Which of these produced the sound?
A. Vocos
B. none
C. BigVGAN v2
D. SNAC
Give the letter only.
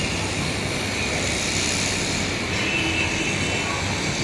B